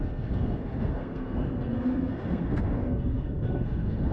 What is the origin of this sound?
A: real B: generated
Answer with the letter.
B